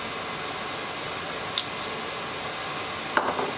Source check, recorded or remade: recorded